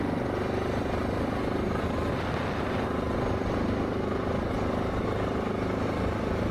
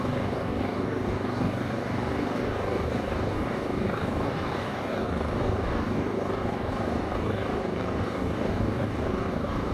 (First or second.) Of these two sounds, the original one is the first